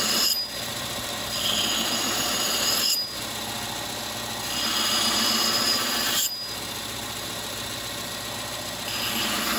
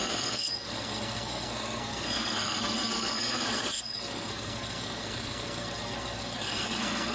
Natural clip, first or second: first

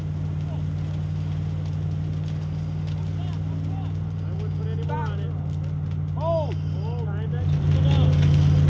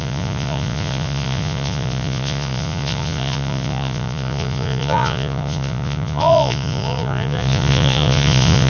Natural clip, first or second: first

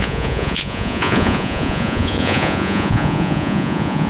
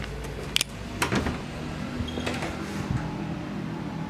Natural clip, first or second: second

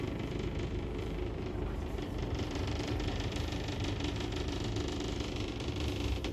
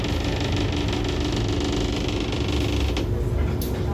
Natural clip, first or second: second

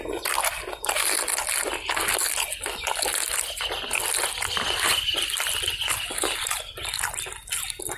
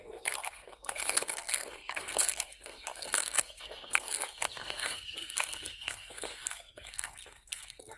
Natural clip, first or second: first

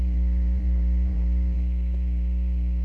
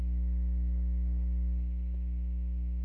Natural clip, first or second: second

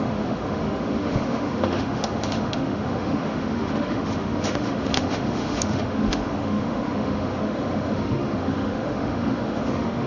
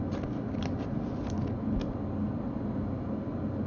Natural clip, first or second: second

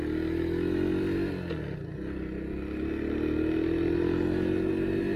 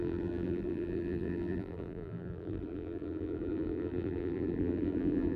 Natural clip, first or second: first